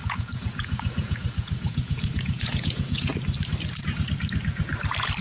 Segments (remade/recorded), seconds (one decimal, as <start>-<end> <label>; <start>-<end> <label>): 0.0-3.1 remade; 3.1-5.2 recorded